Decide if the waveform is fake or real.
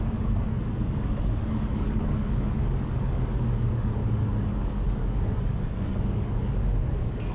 fake